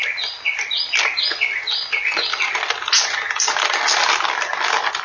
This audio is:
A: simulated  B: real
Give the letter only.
B